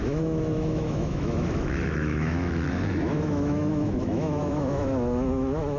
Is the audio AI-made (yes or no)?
yes